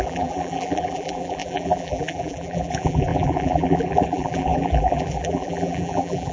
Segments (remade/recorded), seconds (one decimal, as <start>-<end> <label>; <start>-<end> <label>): 0.0-6.3 remade